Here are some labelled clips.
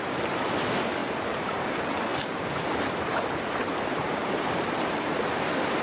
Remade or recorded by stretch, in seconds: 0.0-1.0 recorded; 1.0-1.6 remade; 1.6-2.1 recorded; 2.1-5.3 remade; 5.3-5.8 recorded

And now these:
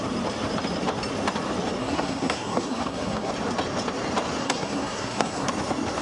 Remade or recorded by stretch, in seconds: 0.0-1.8 recorded; 1.8-3.3 remade; 3.3-4.4 recorded; 4.4-5.5 remade; 5.5-6.0 recorded

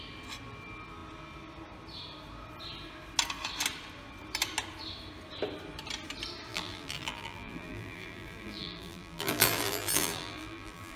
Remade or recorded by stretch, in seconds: 0.0-6.5 recorded; 6.5-11.0 remade

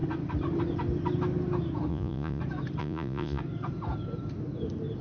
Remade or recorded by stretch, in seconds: 0.0-1.9 recorded; 1.9-2.4 remade; 2.4-2.8 recorded; 2.8-3.4 remade; 3.4-5.0 recorded